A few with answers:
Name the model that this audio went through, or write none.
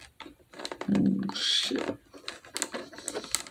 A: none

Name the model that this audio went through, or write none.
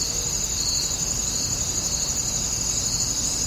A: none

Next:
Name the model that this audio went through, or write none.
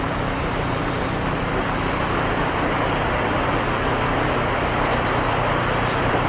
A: vocoder, BigVGAN v2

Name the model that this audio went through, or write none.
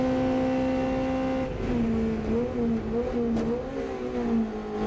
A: none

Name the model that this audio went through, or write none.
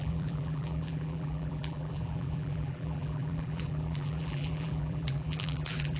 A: vocoder, BigVGAN v2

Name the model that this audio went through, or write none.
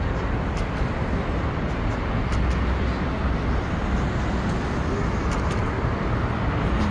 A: none